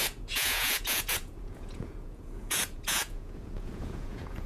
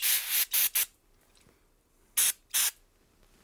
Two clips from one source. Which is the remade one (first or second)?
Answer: first